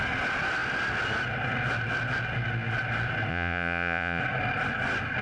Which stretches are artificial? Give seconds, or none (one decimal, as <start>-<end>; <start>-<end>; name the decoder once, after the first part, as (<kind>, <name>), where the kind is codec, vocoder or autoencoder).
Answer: 3.3-4.2 (vocoder, Vocos)